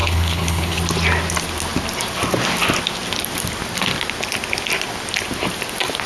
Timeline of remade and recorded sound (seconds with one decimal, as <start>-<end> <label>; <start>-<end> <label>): 0.0-0.8 remade; 0.8-6.1 recorded